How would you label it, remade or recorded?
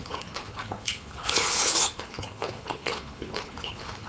remade